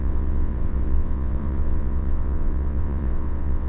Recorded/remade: remade